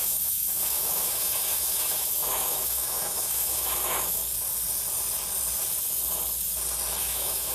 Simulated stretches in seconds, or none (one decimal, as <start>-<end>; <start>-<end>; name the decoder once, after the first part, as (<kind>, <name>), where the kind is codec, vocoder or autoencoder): 0.0-4.2 (autoencoder, DAC-VAE); 7.0-7.5